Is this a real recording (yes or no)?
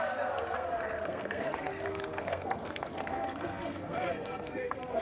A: no